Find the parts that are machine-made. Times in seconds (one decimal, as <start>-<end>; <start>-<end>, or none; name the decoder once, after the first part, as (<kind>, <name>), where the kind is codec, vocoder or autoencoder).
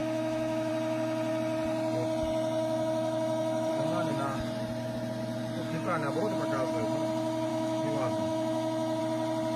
0.0-0.7 (autoencoder, DAC-VAE); 2.6-3.7; 7.5-9.0